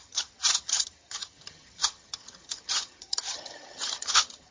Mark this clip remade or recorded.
remade